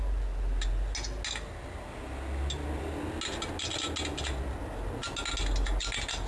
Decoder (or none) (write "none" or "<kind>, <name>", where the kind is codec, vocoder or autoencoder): none